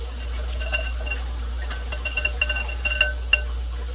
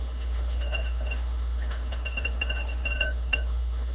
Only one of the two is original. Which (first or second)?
first